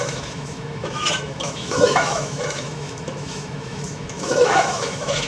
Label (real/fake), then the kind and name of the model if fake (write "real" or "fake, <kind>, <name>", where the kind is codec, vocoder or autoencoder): fake, autoencoder, DAC-VAE